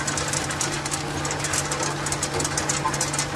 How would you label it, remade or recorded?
recorded